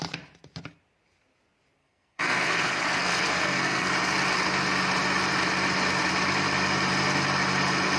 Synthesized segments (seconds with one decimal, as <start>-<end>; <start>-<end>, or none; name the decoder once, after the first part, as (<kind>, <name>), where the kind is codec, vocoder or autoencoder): 1.8-3.9 (codec, SNAC)